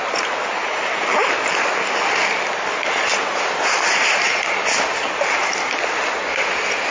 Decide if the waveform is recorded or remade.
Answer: recorded